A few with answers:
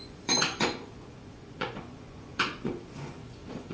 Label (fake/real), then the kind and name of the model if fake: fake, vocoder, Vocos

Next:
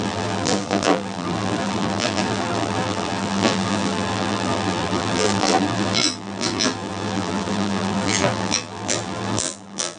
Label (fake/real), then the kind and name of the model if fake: fake, vocoder, BigVGAN v2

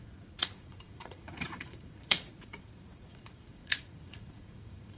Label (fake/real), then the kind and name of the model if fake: fake, vocoder, Vocos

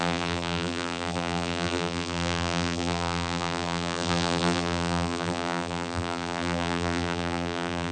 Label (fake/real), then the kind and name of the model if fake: fake, vocoder, BigVGAN v2